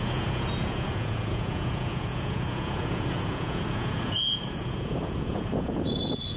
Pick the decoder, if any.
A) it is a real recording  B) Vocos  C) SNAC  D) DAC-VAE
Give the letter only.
B